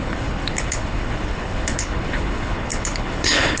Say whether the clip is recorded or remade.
remade